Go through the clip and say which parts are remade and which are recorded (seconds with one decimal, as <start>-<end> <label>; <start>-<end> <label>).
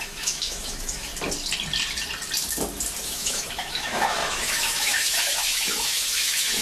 0.0-1.1 remade; 1.1-3.0 recorded; 3.0-6.6 remade